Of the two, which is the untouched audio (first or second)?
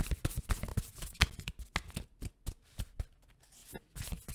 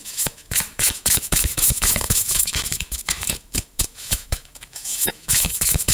first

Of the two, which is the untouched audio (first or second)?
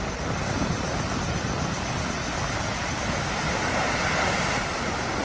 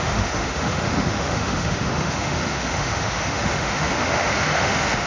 first